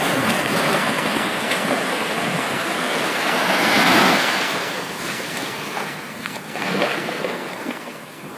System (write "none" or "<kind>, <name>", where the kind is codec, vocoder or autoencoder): codec, SNAC